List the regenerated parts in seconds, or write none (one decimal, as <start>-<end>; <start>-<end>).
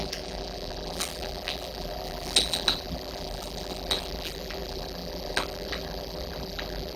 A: 0.0-7.0